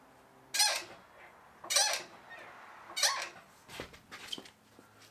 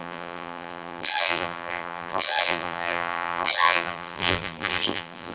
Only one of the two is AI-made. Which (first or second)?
second